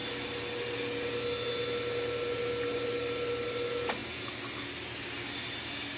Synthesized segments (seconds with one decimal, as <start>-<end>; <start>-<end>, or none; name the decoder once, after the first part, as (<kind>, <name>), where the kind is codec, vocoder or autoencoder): none